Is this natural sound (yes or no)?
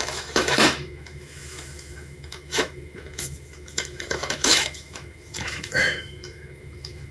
no